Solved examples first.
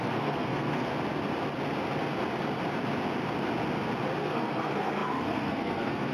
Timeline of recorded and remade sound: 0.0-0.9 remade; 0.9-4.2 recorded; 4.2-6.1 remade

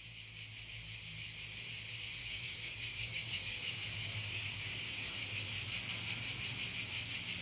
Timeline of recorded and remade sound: 0.0-2.2 recorded; 2.2-5.2 remade; 5.2-7.4 recorded

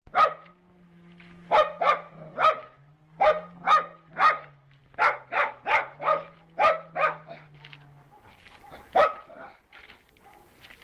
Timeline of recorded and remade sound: 0.0-10.8 recorded